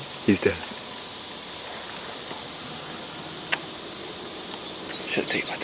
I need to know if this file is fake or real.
real